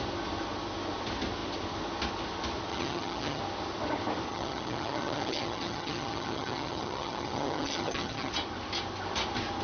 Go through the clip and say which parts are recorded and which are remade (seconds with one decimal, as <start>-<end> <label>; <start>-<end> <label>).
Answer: 0.0-2.7 recorded; 2.7-3.4 remade; 3.4-4.3 recorded; 4.3-8.3 remade; 8.3-9.6 recorded